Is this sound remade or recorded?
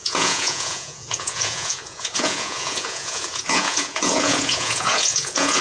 remade